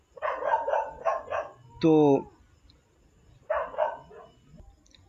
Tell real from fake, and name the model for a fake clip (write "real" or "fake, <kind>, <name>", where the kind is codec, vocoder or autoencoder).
real